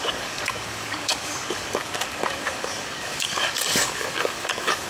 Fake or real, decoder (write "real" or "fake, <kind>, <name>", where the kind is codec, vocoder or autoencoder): fake, codec, DAC